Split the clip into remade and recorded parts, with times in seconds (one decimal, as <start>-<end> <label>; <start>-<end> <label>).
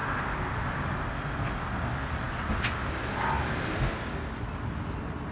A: 0.0-5.3 recorded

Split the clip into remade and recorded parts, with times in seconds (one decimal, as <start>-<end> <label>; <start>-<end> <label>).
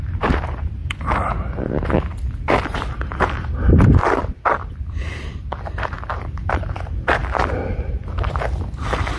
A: 0.0-4.0 remade; 4.0-4.7 recorded; 4.7-7.2 remade; 7.2-7.9 recorded; 7.9-9.2 remade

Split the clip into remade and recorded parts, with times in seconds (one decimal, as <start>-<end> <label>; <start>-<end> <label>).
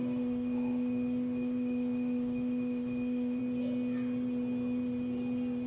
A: 0.0-3.4 remade; 3.4-5.7 recorded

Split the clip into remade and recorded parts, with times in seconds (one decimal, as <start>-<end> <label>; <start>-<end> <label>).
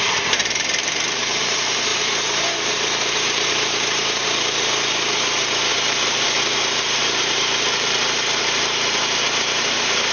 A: 0.0-10.1 remade